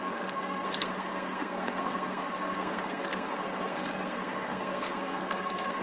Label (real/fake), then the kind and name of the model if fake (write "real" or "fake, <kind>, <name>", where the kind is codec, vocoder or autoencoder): fake, codec, SNAC